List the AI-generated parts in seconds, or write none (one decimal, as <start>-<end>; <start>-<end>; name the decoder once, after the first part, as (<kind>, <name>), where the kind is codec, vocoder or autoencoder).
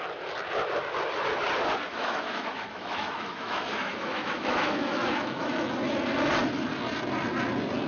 1.9-5.7 (autoencoder, DAC-VAE)